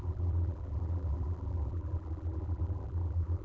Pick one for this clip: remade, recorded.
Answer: remade